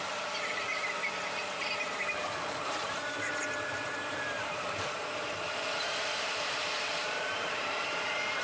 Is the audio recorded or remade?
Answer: remade